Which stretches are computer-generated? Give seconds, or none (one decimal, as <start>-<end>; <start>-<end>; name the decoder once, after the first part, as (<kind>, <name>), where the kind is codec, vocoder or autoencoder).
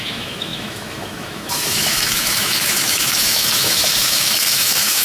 0.0-5.0 (autoencoder, DAC-VAE)